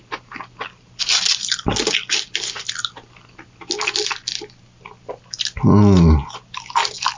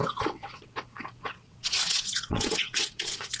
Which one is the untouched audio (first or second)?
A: first